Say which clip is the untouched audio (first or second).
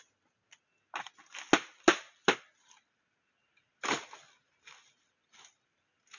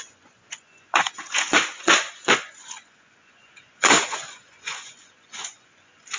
first